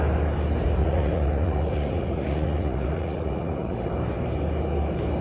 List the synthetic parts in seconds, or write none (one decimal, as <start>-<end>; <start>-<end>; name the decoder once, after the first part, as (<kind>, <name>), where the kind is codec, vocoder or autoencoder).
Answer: 0.8-3.9 (vocoder, Vocos)